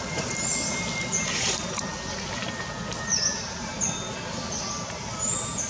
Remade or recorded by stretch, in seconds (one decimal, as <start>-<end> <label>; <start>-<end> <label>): 0.0-1.9 remade; 1.9-2.9 recorded; 2.9-3.7 remade; 3.7-5.0 recorded; 5.0-5.7 remade